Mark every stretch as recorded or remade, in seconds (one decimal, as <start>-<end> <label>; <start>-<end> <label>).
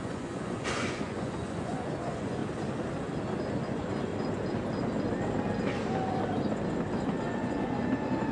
0.0-2.4 remade; 2.4-3.6 recorded; 3.6-4.1 remade; 4.1-7.2 recorded; 7.2-8.3 remade